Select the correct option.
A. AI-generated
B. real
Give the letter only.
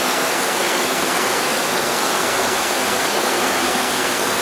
A